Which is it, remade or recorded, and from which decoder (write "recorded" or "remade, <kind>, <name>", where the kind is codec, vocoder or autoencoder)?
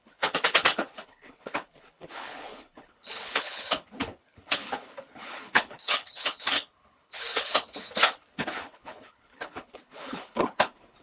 remade, codec, HILCodec